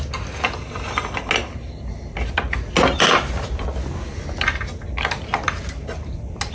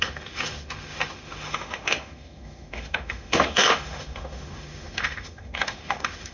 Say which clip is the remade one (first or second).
second